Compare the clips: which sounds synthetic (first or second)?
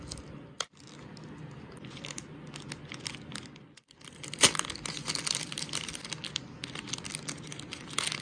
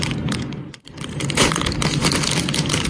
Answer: second